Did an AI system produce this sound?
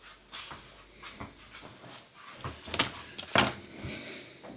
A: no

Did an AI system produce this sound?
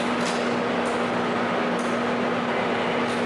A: no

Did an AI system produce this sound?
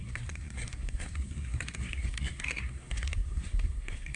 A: yes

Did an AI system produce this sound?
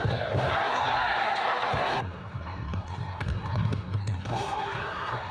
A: yes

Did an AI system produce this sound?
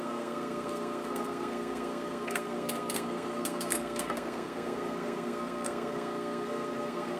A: yes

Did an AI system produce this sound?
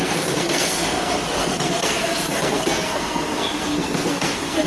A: yes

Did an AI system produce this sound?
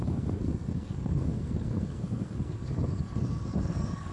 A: yes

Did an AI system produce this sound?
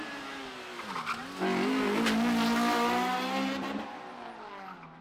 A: no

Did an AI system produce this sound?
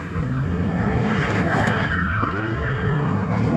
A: yes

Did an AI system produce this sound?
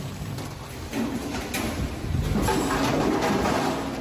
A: no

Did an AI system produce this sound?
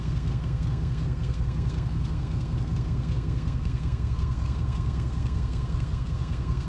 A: yes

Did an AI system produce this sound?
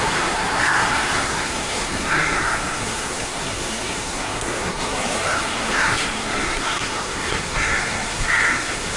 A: yes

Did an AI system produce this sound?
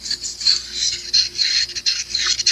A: no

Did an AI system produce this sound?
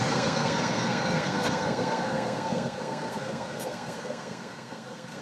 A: yes